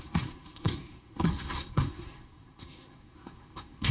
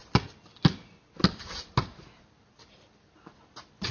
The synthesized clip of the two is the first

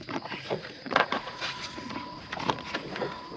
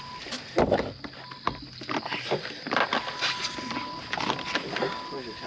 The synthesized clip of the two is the first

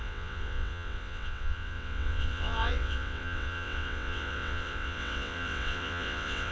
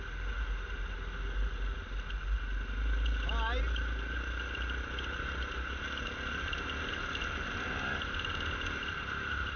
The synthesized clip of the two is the first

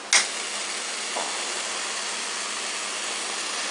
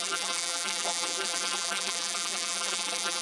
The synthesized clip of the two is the second